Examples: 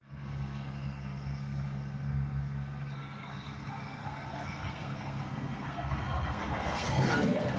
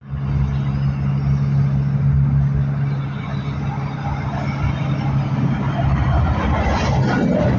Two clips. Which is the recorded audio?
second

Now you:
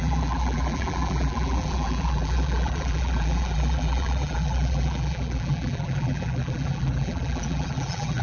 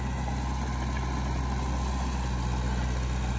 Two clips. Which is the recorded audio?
second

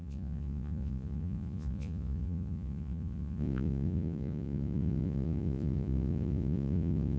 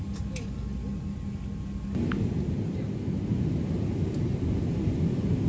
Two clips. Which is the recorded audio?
second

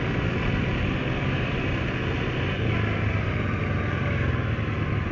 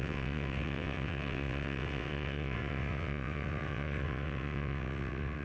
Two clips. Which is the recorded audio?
first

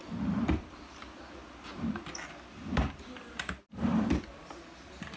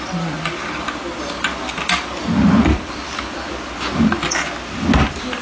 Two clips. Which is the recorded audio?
second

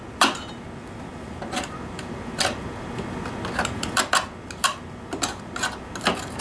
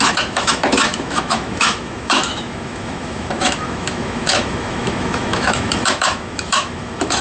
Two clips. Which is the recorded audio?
first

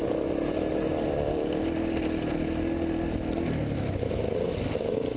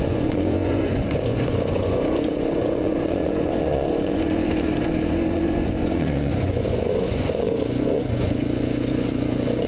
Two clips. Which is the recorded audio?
first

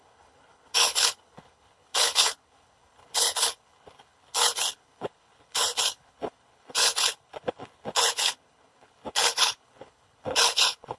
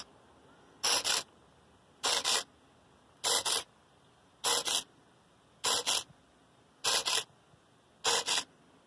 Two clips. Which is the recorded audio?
second